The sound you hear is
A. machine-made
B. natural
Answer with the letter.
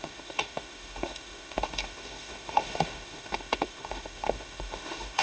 A